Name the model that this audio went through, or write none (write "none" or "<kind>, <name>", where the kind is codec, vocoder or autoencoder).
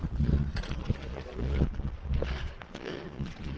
vocoder, Vocos